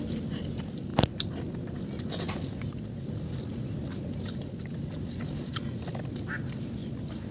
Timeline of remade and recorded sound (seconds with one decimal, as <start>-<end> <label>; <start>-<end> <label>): 0.0-7.3 recorded